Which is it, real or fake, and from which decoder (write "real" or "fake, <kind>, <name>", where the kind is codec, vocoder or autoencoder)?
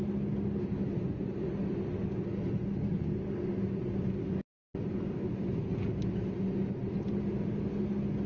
real